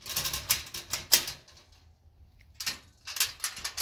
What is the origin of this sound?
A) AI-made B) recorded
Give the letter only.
B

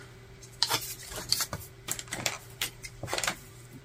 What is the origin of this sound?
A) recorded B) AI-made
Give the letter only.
B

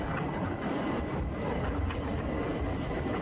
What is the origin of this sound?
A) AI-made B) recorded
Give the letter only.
B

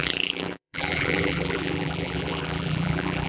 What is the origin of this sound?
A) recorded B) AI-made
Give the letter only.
B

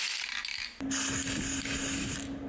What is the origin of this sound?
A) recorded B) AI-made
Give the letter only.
A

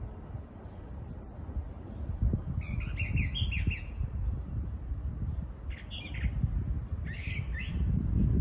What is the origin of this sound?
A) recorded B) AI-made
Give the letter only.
A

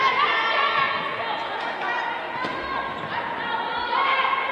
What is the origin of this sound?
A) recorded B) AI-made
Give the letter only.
A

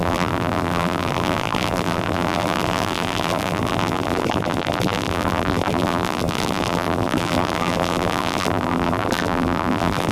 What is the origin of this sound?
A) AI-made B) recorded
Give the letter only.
A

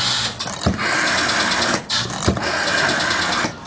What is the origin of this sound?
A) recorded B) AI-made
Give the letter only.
A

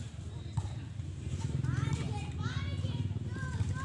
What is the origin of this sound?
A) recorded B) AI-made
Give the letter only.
B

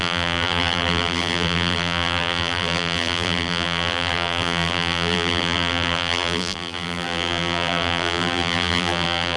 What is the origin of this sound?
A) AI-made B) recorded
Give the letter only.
A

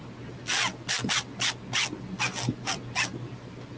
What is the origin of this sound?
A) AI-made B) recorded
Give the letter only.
B